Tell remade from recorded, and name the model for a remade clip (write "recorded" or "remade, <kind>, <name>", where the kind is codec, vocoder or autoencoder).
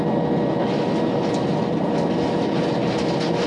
recorded